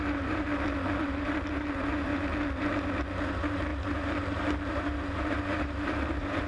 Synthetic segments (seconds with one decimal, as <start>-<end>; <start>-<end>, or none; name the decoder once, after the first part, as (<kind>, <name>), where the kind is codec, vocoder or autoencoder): 0.0-0.5 (vocoder, BigVGAN v2); 1.0-2.1; 3.1-6.5